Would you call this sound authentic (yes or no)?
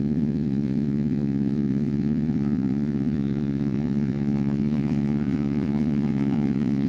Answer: no